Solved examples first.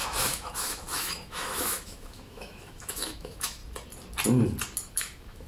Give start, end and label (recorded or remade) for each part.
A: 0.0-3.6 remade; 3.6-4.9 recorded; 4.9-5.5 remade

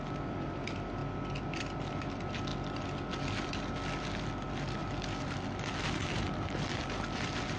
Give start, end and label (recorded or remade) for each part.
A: 0.0-7.6 recorded

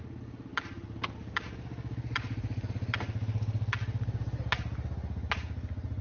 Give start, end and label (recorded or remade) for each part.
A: 0.0-6.0 recorded

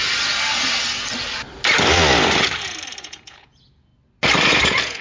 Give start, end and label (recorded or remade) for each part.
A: 0.0-3.0 recorded; 3.0-3.9 remade; 3.9-4.6 recorded; 4.6-5.0 remade